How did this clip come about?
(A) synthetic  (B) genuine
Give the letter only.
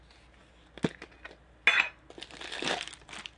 B